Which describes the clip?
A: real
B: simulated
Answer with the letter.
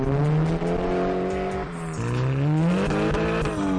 A